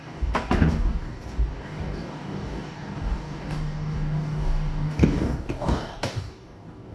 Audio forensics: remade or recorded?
remade